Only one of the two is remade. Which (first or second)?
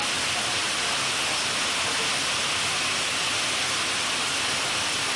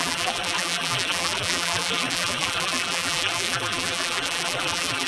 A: second